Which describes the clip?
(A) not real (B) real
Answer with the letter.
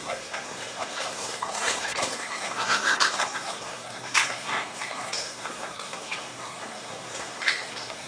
A